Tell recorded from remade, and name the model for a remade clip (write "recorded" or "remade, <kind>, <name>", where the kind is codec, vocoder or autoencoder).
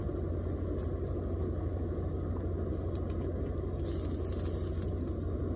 recorded